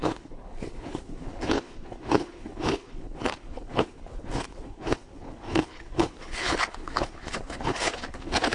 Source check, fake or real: fake